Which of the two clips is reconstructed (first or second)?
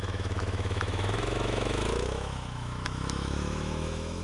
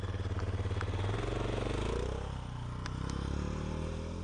first